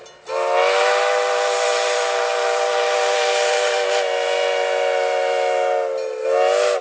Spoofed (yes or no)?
no